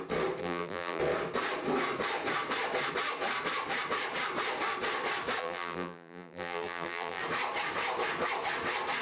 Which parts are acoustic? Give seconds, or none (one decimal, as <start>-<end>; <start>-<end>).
0.0-0.4; 1.0-5.4; 7.2-9.0